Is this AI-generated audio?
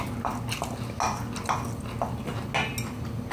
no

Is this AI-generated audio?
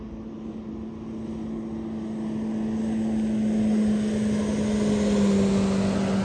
no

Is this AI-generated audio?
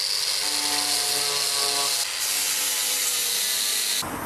no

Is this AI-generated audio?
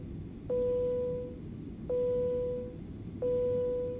no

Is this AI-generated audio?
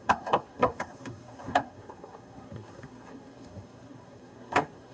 yes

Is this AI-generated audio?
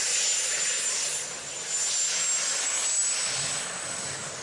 no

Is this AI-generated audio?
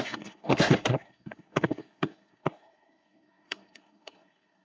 yes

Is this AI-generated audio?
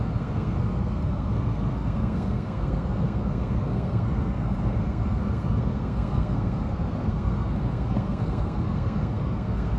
yes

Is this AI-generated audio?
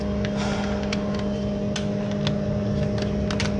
no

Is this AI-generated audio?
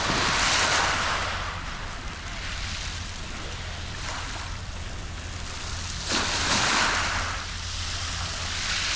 no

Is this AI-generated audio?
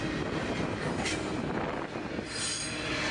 no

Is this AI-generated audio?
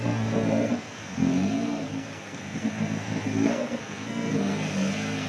yes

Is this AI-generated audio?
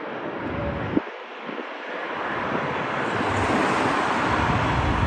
no